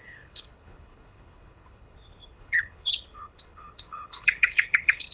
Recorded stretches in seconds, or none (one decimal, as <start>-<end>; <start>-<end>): none